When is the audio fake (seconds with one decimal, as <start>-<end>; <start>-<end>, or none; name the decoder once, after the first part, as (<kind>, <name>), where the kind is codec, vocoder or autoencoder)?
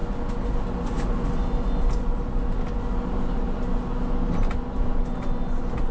none